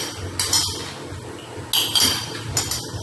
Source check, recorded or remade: recorded